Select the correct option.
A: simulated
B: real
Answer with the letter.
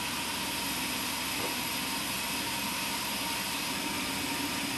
B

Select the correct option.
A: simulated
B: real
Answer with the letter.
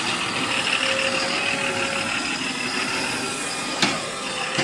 A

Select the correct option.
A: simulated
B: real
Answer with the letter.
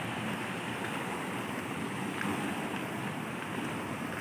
B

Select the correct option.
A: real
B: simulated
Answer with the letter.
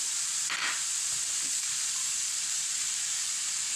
B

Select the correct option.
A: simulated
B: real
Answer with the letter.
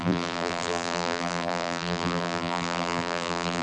A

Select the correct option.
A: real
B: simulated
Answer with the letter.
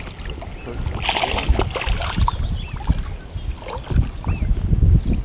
A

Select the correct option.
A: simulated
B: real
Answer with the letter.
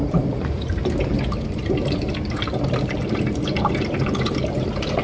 A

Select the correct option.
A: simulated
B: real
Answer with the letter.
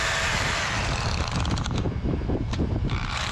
A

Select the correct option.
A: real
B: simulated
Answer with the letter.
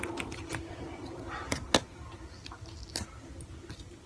A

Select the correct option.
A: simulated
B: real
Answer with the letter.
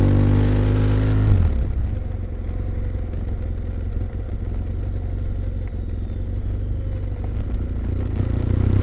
B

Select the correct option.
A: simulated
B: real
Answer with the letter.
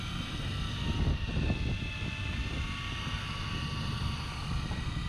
B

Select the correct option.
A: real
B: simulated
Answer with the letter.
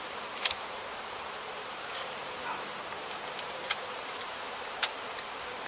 B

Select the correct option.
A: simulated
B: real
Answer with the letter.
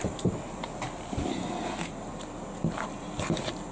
B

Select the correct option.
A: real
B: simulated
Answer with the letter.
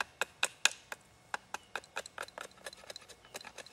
A